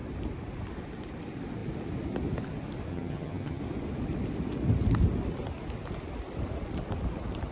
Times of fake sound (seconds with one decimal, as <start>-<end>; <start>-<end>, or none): 2.9-3.6